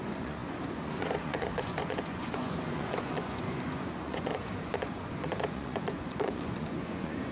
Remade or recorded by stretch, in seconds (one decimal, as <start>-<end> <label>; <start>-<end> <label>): 0.0-7.3 remade